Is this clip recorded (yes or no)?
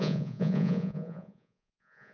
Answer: no